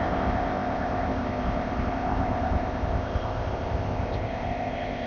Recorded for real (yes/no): no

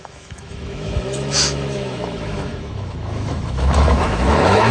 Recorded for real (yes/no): no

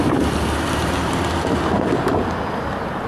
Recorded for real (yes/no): yes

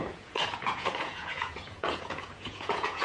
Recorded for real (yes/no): no